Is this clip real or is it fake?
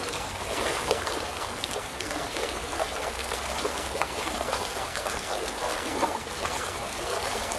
fake